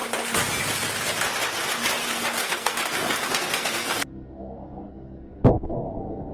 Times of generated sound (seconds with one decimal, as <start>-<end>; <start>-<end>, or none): 2.4-6.3